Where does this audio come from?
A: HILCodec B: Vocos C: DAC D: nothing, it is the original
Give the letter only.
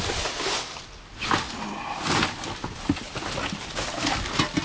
D